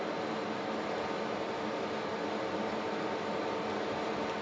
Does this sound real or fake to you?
real